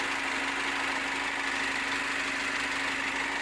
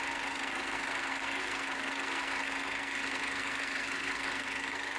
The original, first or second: first